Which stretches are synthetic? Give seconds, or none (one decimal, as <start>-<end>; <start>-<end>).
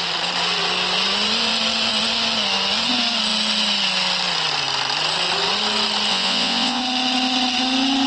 6.1-6.8